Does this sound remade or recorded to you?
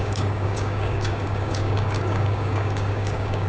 remade